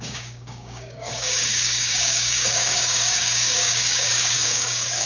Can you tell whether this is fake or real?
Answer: fake